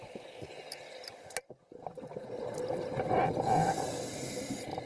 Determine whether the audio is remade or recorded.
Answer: recorded